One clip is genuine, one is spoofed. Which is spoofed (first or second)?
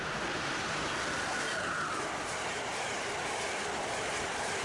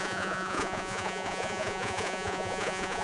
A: second